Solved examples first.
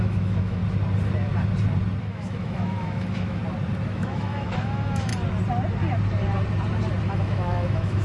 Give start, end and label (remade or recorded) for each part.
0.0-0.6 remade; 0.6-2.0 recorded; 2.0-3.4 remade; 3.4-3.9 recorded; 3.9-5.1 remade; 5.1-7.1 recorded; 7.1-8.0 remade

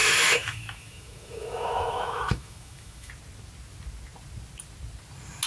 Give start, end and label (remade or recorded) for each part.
0.0-3.1 remade; 3.1-5.5 recorded

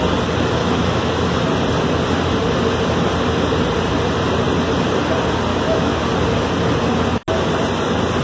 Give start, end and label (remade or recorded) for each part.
0.0-0.6 recorded; 0.6-1.2 remade; 1.2-5.5 recorded; 5.5-6.0 remade; 6.0-8.2 recorded

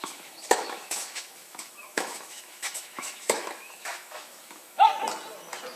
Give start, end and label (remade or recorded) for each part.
0.0-4.9 remade; 4.9-5.8 recorded

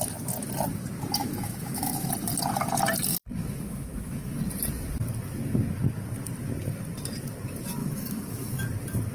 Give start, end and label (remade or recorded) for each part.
0.0-1.2 recorded; 1.2-2.1 remade; 2.1-3.1 recorded; 3.1-4.4 remade; 4.4-7.8 recorded; 7.8-8.6 remade; 8.6-9.1 recorded